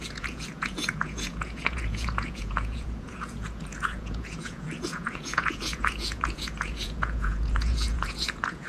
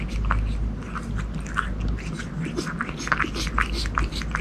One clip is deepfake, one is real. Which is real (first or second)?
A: second